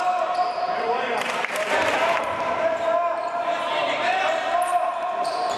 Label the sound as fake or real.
fake